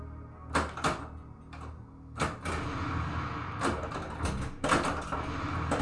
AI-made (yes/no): no